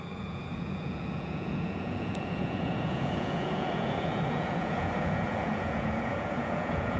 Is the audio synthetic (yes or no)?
yes